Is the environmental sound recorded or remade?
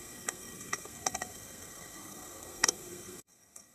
remade